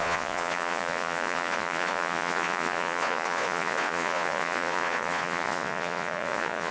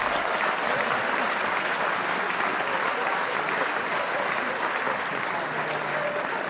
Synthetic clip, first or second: first